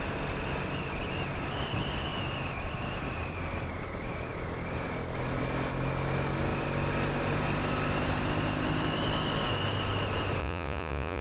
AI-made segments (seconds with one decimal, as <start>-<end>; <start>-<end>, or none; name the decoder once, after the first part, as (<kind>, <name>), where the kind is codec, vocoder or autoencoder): 10.4-11.2 (vocoder, Vocos)